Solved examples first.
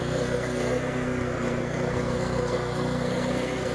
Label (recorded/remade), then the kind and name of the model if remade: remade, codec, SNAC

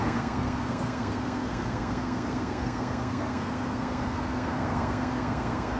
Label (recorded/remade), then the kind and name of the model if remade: remade, codec, SNAC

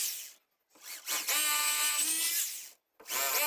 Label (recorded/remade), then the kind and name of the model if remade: recorded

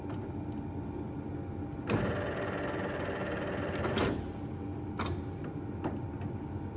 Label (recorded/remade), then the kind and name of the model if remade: recorded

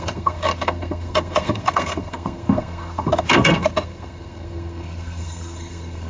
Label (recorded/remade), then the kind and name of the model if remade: remade, codec, SNAC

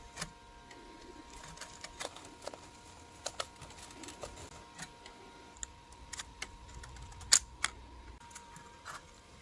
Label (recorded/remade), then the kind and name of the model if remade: recorded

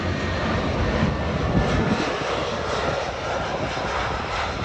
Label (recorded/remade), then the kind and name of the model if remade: recorded